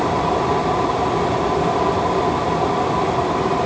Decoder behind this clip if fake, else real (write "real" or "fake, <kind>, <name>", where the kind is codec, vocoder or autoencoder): real